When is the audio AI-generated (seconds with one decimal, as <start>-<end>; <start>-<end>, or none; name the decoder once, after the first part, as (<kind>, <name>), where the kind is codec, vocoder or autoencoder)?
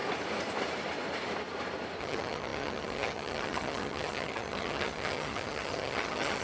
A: 2.0-6.4 (vocoder, HiFi-GAN)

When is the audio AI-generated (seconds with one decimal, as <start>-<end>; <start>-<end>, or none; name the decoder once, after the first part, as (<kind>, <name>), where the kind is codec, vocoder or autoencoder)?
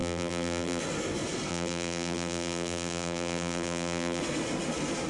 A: 0.0-0.8 (vocoder, BigVGAN v2); 1.5-4.2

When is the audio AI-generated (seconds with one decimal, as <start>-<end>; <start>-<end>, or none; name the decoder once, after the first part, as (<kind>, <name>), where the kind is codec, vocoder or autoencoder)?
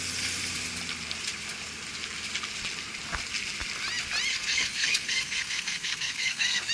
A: 4.3-6.7 (codec, SNAC)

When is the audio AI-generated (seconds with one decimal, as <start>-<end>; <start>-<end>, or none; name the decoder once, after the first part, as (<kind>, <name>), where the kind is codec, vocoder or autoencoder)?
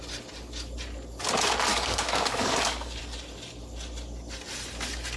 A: 1.7-3.0 (codec, DAC)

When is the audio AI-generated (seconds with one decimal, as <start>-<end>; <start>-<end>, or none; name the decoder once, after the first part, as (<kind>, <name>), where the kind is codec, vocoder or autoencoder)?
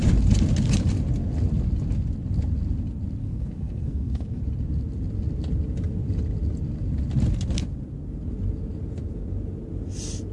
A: 3.2-4.4 (codec, SNAC)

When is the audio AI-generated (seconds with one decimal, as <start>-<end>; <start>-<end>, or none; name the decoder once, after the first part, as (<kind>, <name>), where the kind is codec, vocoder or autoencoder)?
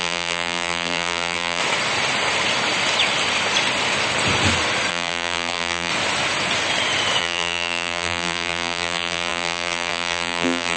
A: 0.0-1.6 (vocoder, BigVGAN v2); 4.9-5.9; 7.2-10.8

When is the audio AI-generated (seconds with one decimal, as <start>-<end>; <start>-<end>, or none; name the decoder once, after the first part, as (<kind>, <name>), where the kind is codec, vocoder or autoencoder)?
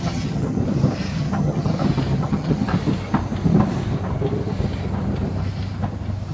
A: 0.0-0.6 (vocoder, HiFi-GAN); 1.2-1.7; 2.2-2.7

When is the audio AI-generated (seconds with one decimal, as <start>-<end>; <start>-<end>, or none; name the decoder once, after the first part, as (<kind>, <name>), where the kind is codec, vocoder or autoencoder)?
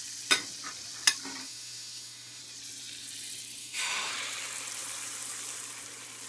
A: 1.4-2.4 (autoencoder, DAC-VAE); 3.6-4.1